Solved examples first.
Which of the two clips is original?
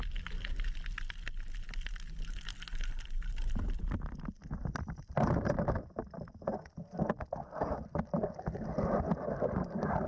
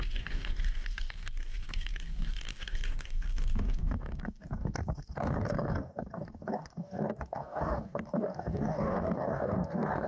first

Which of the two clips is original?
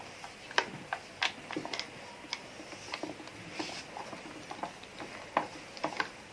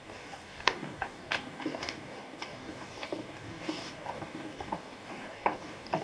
first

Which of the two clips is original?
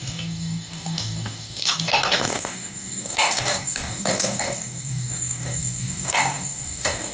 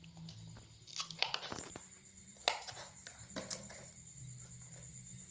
second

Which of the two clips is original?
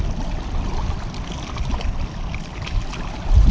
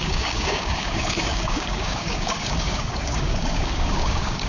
first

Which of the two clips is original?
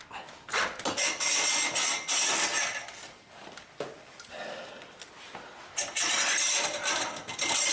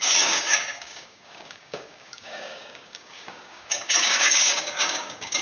first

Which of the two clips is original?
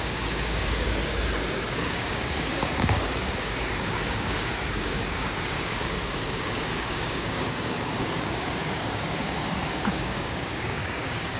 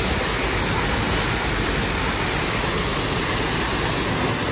second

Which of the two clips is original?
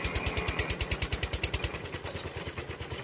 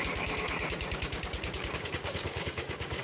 first